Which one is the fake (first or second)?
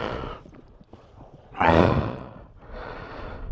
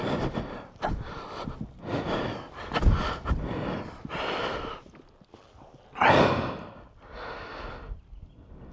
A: first